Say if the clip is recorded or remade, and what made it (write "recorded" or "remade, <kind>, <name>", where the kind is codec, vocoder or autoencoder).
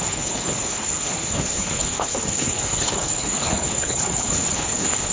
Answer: remade, codec, HILCodec